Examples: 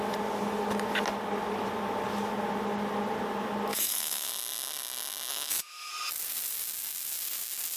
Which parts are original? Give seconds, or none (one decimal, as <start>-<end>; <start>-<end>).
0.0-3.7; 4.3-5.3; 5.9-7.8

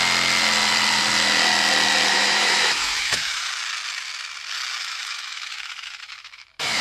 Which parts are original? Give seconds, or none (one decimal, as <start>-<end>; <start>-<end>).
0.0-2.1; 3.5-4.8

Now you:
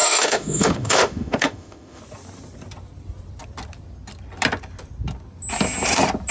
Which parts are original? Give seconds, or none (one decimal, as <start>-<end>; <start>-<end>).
2.0-6.3

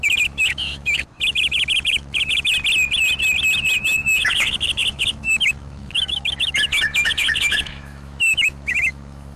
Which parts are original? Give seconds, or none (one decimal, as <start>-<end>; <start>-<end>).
2.5-3.8